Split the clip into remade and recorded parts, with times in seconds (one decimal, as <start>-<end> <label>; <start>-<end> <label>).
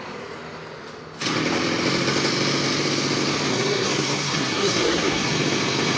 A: 0.0-3.5 recorded; 3.5-5.3 remade; 5.3-6.0 recorded